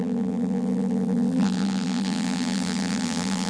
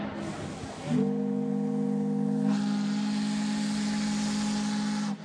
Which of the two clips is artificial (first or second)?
first